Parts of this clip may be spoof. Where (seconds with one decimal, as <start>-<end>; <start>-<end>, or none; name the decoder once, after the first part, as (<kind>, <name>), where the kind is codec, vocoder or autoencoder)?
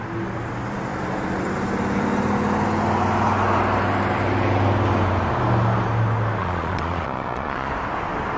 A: 6.4-7.7 (vocoder, Vocos)